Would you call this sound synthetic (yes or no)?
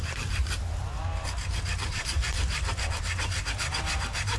yes